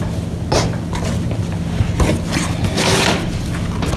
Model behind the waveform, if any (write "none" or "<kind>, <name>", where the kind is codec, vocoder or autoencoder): none